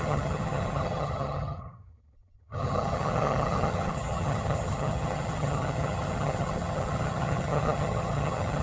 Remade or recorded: remade